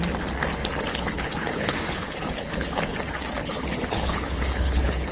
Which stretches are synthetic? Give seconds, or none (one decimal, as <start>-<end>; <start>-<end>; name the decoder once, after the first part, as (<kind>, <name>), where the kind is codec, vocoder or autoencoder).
0.9-2.8 (codec, HILCodec); 3.4-5.1